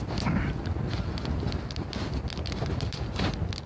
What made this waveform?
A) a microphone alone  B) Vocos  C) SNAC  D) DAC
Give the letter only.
A